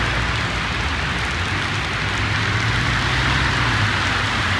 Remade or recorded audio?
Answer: recorded